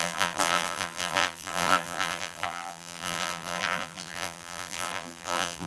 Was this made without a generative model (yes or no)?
no